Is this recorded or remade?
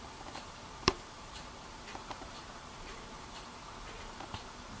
remade